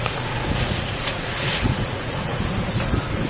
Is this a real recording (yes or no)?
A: no